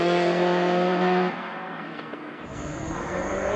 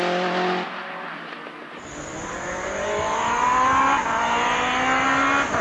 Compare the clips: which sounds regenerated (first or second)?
first